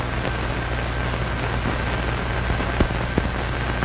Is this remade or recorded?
recorded